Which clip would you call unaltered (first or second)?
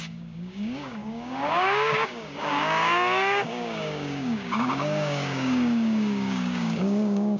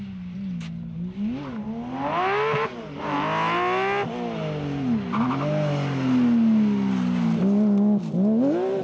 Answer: second